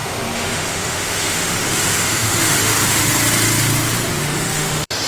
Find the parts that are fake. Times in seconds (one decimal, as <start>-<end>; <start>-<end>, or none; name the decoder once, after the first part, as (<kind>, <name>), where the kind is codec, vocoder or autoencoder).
0.0-3.1 (autoencoder, DAC-VAE); 4.1-5.1